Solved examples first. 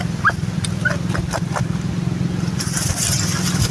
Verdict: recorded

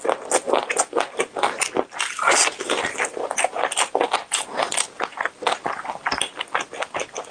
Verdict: recorded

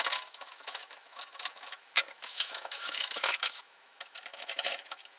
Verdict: remade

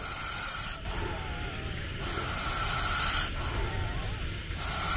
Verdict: recorded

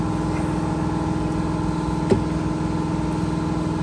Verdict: recorded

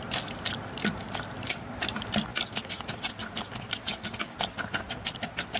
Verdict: recorded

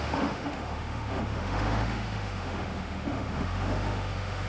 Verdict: remade